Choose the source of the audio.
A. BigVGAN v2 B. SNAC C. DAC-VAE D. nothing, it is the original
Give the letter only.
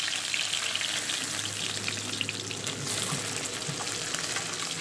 D